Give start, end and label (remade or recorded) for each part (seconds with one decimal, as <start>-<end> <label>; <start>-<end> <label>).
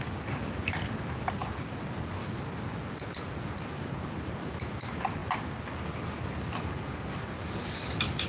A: 0.0-8.3 recorded